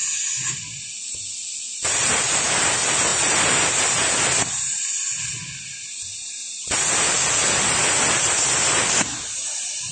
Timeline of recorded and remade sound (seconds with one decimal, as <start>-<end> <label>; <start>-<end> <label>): 0.0-9.9 recorded